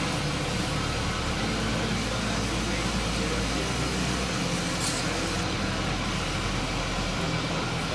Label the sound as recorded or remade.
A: recorded